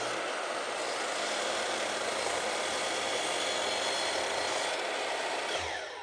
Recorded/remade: recorded